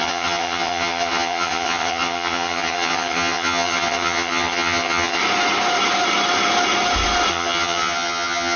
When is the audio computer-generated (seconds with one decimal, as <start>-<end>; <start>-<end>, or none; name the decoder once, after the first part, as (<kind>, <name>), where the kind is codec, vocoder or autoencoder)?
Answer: 0.0-5.2 (vocoder, HiFi-GAN); 7.3-8.6